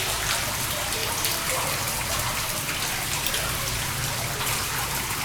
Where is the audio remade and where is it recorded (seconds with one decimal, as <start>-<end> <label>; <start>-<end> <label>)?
0.0-5.2 recorded